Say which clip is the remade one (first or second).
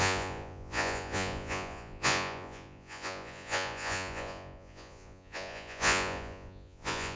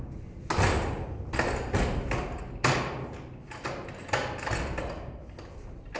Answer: first